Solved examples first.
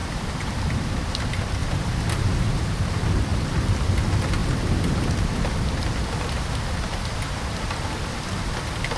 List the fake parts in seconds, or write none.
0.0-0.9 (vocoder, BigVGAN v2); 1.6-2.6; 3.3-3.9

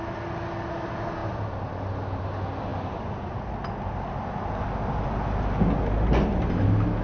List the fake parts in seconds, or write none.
none

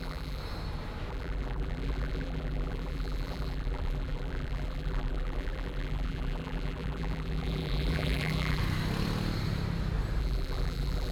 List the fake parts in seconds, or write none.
0.0-0.4 (vocoder, BigVGAN v2); 1.1-8.6; 10.2-11.1